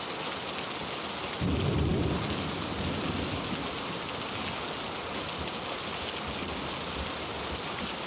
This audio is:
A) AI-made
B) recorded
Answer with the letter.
B